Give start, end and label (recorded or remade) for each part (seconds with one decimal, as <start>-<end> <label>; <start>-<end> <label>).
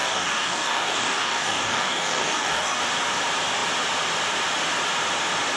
0.0-2.8 remade; 2.8-5.6 recorded